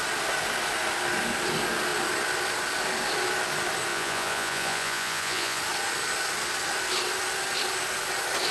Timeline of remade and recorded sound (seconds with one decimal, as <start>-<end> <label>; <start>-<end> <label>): 0.0-3.9 recorded; 3.9-5.6 remade; 5.6-8.5 recorded